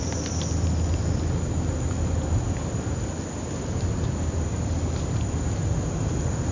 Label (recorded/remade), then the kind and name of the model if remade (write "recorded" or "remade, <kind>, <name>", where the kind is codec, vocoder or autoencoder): recorded